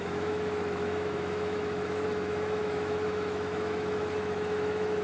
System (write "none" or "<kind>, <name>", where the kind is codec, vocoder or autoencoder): autoencoder, DAC-VAE